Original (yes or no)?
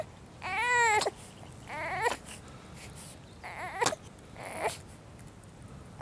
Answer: yes